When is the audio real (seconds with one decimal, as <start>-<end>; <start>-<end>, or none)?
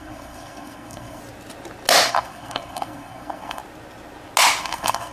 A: 1.2-2.1; 3.6-4.6